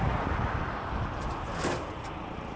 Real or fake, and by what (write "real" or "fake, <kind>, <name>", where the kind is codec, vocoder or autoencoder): real